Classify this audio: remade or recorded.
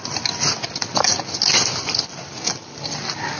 recorded